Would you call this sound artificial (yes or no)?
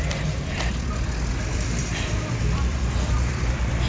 yes